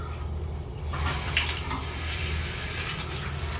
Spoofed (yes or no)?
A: no